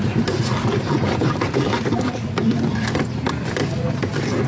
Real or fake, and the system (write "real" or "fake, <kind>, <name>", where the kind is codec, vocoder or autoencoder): real